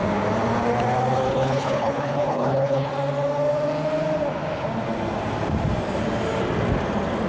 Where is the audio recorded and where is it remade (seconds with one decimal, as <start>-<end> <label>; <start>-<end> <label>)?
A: 0.0-1.3 recorded; 1.3-2.9 remade; 2.9-7.3 recorded